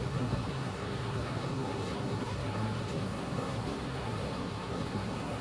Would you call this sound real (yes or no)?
no